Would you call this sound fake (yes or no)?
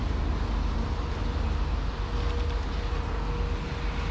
no